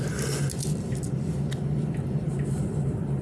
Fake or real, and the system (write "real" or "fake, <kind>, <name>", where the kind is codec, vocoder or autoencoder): real